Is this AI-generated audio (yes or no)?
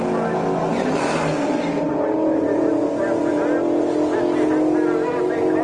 no